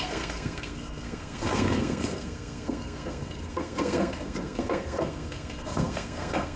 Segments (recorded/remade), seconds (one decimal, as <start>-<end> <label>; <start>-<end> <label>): 0.0-6.6 remade